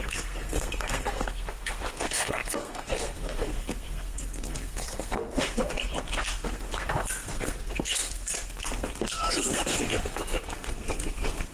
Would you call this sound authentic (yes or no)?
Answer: no